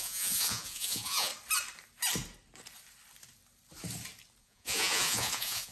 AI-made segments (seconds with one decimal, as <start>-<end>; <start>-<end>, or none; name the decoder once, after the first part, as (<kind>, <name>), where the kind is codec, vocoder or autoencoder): 0.0-1.3 (vocoder, Vocos); 4.4-5.7